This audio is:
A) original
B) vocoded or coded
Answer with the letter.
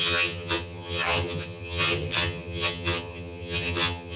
B